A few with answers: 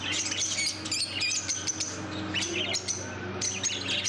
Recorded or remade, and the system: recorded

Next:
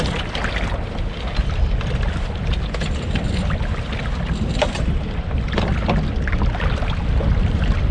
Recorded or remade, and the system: recorded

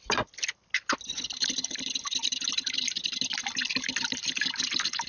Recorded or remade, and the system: recorded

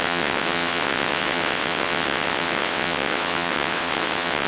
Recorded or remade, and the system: remade, vocoder, WaveNeXt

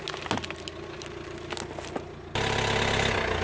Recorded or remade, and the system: recorded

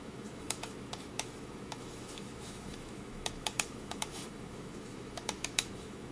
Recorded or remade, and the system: remade, autoencoder, DAC-VAE